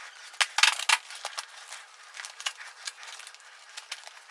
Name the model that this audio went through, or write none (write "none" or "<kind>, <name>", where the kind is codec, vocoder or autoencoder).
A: none